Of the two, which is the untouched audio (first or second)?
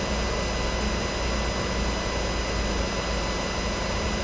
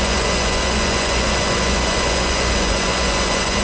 first